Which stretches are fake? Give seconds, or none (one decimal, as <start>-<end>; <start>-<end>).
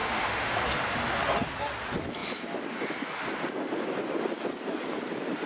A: 0.0-0.6